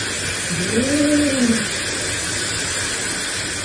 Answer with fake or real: real